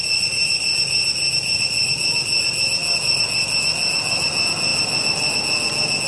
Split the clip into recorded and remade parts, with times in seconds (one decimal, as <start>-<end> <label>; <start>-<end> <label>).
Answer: 0.0-6.1 recorded